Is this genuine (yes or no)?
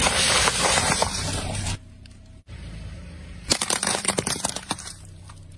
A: no